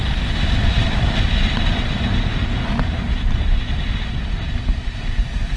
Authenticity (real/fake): real